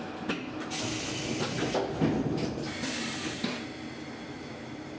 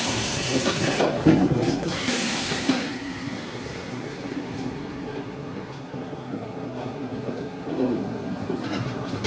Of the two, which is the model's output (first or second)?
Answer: second